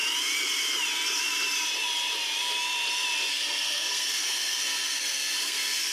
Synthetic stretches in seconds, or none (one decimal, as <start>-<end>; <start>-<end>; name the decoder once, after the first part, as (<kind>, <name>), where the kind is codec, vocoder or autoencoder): 3.3-5.9 (codec, SNAC)